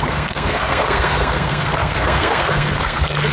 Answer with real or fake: fake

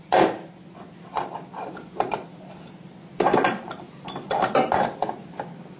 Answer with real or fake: real